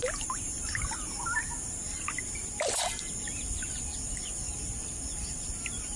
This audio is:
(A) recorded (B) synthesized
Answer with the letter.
A